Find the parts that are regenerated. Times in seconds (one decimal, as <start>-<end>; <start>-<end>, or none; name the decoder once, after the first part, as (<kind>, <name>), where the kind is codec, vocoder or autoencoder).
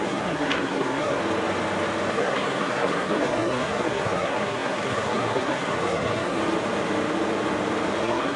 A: 0.0-1.2 (codec, SNAC); 2.1-6.4; 8.0-8.4